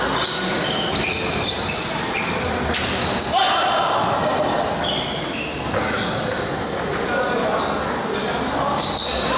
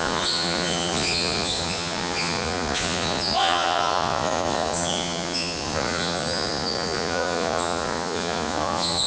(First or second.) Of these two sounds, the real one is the first